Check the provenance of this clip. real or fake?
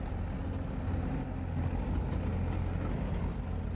real